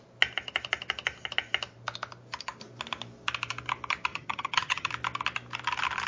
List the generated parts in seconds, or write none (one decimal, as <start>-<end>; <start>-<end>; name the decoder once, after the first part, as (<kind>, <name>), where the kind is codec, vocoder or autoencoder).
4.1-4.9 (vocoder, HiFi-GAN)